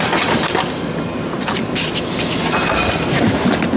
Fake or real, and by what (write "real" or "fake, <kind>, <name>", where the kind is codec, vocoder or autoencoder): real